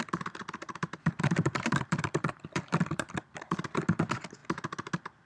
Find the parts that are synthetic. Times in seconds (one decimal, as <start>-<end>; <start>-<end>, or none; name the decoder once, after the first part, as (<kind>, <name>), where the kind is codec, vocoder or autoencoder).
0.4-3.6 (vocoder, BigVGAN v2)